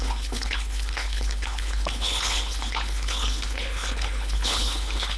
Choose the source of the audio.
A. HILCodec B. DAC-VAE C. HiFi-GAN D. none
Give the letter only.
A